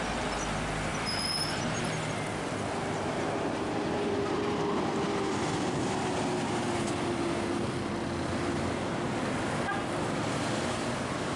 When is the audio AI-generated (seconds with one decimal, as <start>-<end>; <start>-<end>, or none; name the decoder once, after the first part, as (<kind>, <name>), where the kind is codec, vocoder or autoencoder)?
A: none